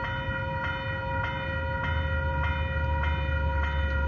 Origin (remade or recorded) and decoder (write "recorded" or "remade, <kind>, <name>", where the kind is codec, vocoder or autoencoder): recorded